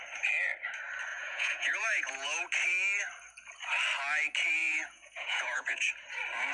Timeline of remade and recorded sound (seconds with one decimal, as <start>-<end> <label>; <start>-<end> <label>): 0.0-1.1 recorded; 1.1-2.4 remade; 2.4-4.6 recorded; 4.6-5.9 remade; 5.9-6.5 recorded